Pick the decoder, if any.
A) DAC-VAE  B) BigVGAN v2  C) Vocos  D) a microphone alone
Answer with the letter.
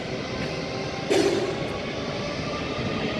D